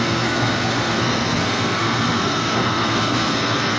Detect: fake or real fake